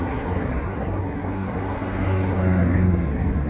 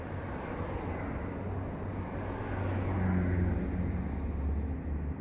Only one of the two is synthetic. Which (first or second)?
first